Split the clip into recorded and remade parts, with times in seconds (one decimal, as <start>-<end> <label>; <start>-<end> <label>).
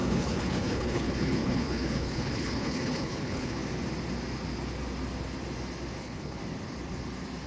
0.0-3.6 remade; 3.6-6.0 recorded; 6.0-6.4 remade; 6.4-7.5 recorded